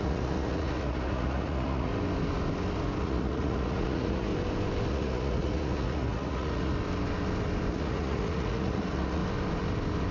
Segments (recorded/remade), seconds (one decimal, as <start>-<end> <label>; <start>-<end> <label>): 0.0-1.9 remade; 1.9-3.0 recorded; 3.0-4.3 remade; 4.3-4.9 recorded; 4.9-6.7 remade; 6.7-7.7 recorded; 7.7-9.2 remade; 9.2-10.1 recorded